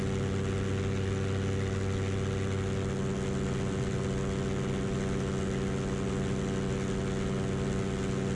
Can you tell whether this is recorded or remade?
recorded